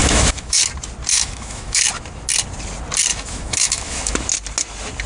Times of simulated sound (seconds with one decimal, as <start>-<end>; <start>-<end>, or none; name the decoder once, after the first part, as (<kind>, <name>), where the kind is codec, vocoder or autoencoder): 0.0-0.6 (autoencoder, DAC-VAE); 1.1-1.8; 3.1-4.1